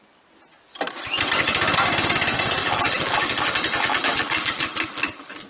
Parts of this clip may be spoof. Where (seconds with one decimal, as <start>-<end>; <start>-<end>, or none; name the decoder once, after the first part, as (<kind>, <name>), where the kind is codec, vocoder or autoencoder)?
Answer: 2.6-5.5 (vocoder, BigVGAN v2)